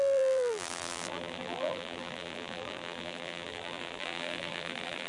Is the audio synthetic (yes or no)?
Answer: yes